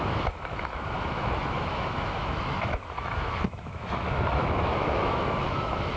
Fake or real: fake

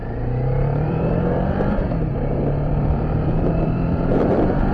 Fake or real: fake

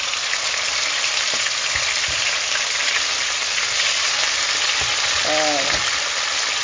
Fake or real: real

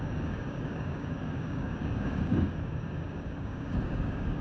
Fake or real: fake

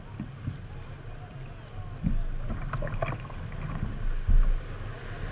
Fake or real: real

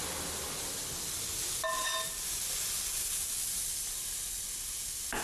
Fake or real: real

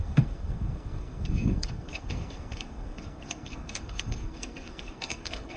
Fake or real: fake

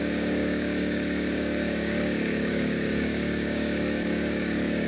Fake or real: fake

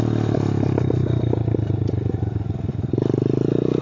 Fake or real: real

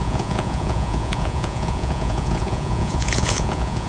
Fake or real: fake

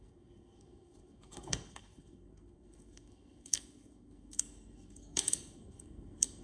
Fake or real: fake